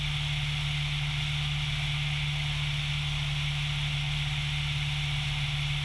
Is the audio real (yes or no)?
yes